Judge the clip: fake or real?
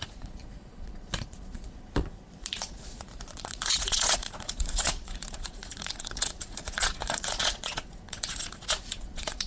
fake